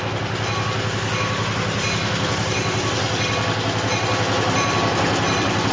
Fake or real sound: real